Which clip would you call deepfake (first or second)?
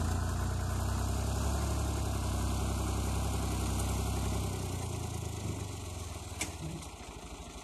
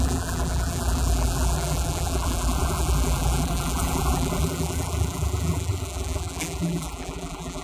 second